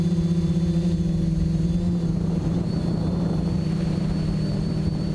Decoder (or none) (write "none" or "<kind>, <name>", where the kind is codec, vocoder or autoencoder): vocoder, BigVGAN v2